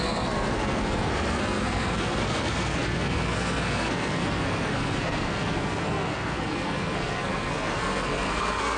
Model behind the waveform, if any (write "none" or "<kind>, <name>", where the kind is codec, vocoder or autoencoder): codec, SNAC